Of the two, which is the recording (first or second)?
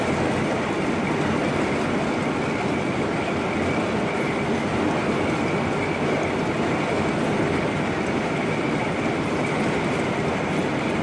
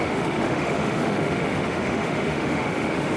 first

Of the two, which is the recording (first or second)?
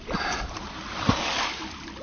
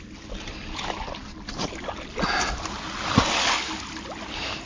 second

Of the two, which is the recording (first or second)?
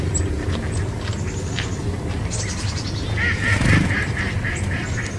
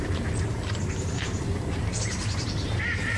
first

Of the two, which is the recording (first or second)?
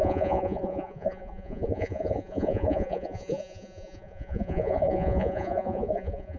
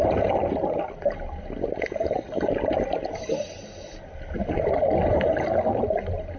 second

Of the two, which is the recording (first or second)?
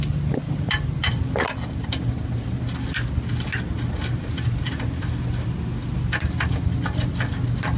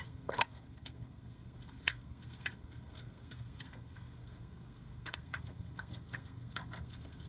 first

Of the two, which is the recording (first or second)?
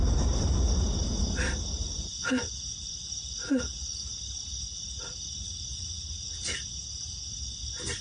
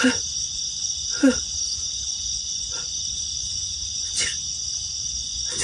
first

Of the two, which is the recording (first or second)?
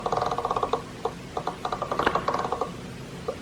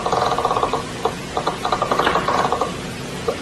first